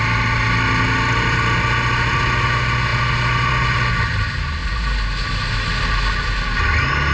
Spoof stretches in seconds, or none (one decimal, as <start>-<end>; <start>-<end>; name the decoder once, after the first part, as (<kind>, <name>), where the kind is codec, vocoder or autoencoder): none